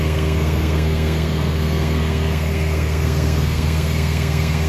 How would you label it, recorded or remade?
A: remade